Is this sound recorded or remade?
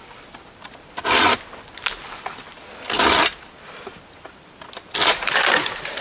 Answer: recorded